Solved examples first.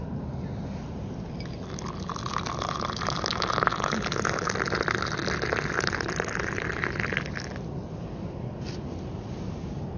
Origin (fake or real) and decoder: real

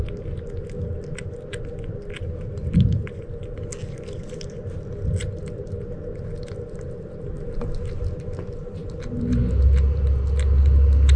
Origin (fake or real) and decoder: real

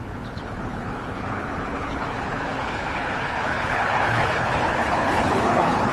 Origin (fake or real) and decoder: fake, codec, HILCodec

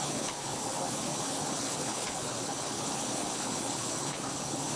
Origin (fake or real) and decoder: fake, codec, HILCodec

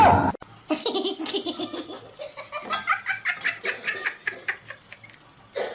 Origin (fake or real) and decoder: real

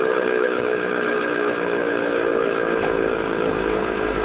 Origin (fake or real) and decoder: fake, codec, HILCodec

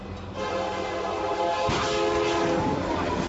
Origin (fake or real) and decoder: real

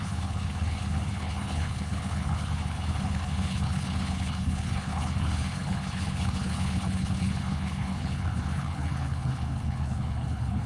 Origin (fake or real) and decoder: fake, codec, HILCodec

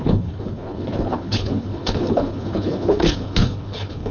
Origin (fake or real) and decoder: fake, codec, HILCodec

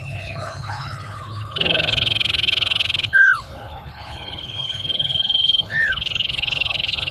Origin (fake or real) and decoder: fake, codec, HILCodec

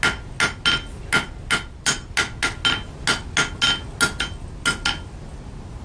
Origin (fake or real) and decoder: real